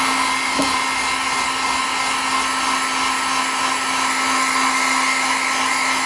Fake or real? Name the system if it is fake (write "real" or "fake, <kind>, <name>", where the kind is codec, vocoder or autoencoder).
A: real